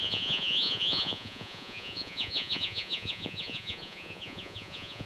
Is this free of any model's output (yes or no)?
no